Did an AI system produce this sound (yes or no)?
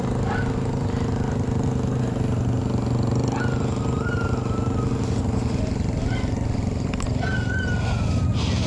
no